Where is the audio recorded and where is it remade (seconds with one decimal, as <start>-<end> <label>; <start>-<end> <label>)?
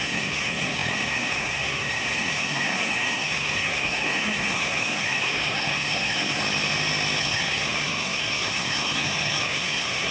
0.0-6.4 remade; 6.4-7.2 recorded; 7.2-10.1 remade